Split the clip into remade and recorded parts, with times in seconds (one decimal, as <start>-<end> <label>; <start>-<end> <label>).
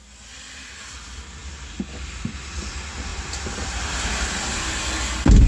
0.0-3.1 recorded; 3.1-4.7 remade; 4.7-5.5 recorded